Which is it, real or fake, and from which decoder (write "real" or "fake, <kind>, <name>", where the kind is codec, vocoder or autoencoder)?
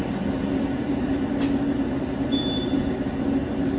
real